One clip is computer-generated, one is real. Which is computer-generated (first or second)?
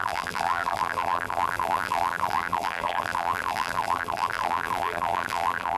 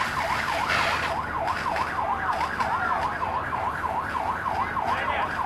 first